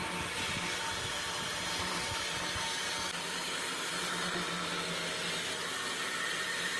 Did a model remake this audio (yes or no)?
no